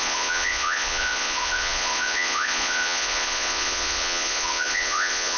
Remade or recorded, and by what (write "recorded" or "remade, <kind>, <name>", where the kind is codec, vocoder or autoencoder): remade, vocoder, Vocos